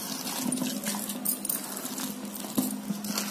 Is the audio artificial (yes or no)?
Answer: no